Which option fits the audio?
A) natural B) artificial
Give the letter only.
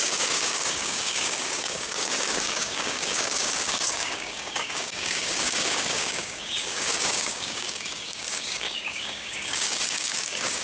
B